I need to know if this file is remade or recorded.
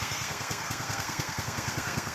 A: remade